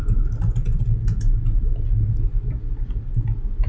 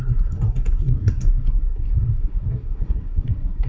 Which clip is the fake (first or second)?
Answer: second